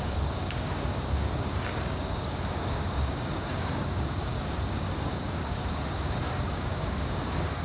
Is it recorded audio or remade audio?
remade